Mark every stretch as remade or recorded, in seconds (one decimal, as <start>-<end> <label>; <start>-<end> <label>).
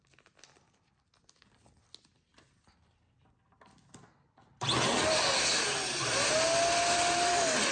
0.0-7.7 recorded